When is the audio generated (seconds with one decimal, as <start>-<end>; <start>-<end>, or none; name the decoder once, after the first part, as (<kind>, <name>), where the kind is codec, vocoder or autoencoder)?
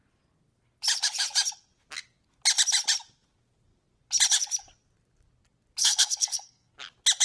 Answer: 5.8-6.7 (codec, SNAC)